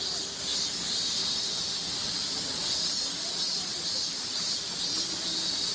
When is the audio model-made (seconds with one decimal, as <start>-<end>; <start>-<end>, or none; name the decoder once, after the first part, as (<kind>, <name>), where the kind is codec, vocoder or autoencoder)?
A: 1.2-4.6 (vocoder, BigVGAN v2)